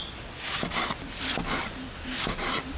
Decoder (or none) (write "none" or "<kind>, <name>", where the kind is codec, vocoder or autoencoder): none